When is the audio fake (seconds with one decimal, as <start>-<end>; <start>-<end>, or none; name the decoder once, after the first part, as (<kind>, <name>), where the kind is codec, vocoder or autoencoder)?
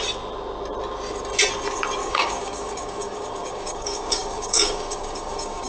2.0-5.7 (codec, DAC)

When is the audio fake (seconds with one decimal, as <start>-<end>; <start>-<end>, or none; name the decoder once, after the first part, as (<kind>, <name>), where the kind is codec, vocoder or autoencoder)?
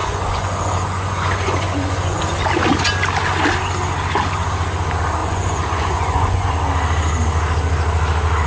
0.0-2.2 (vocoder, Vocos); 5.2-6.5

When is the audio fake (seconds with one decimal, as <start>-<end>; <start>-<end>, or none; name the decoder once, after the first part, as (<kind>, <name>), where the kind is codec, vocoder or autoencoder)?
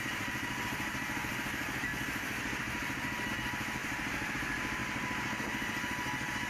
0.0-1.9 (vocoder, BigVGAN v2); 3.3-3.8; 4.3-4.8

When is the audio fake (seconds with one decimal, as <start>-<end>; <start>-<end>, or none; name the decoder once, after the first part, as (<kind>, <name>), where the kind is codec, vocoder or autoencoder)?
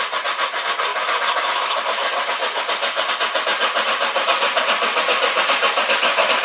none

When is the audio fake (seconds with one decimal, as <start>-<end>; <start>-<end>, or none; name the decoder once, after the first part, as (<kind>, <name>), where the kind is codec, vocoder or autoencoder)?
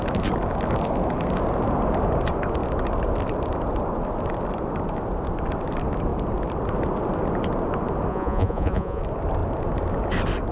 8.1-9.0 (vocoder, Vocos)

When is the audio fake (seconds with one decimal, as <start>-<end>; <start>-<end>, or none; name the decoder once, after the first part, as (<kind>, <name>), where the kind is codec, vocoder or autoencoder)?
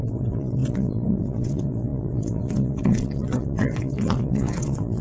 0.0-5.0 (vocoder, WaveNeXt)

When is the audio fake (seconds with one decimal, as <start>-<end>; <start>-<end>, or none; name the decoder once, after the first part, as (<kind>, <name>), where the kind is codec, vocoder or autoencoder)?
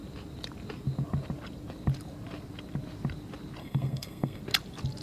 3.6-4.4 (codec, SNAC)